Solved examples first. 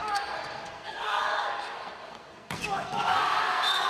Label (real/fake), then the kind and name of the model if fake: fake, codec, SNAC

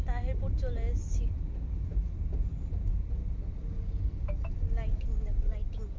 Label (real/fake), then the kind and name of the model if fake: real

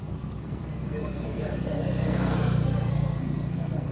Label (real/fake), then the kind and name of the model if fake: fake, codec, SNAC